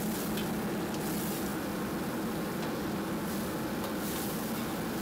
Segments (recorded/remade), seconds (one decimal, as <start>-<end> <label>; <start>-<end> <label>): 0.0-5.0 recorded